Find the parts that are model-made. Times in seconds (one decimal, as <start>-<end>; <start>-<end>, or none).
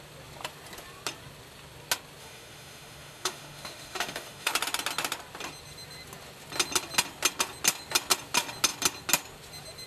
2.2-4.5